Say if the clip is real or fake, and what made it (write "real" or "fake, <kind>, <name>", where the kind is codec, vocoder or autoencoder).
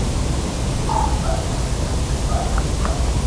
real